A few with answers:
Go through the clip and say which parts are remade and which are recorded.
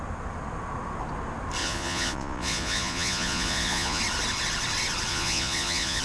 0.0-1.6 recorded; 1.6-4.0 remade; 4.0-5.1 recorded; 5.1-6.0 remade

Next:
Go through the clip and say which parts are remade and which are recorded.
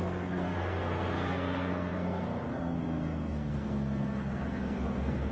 0.0-5.3 remade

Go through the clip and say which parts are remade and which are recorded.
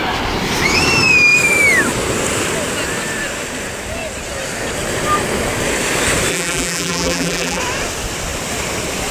0.0-6.3 recorded; 6.3-7.6 remade; 7.6-9.1 recorded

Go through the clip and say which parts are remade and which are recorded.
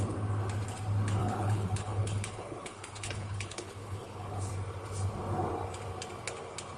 0.0-1.2 recorded; 1.2-4.5 remade; 4.5-6.8 recorded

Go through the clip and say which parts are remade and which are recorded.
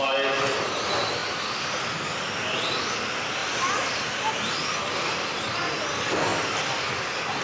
0.0-1.2 recorded; 1.2-1.8 remade; 1.8-3.4 recorded; 3.4-4.3 remade; 4.3-7.4 recorded